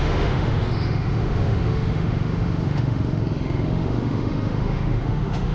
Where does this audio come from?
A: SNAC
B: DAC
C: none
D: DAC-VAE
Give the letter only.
D